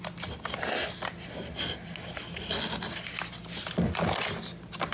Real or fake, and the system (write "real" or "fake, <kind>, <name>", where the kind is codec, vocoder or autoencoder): real